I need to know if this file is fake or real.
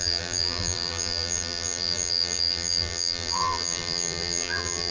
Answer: fake